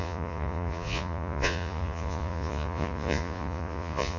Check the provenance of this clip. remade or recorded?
remade